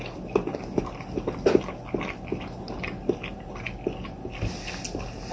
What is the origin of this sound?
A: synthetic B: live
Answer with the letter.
B